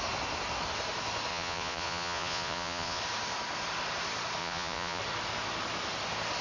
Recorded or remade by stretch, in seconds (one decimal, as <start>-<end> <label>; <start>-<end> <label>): 0.0-1.3 recorded; 1.3-3.0 remade; 3.0-4.4 recorded; 4.4-5.0 remade; 5.0-6.4 recorded